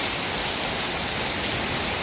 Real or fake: real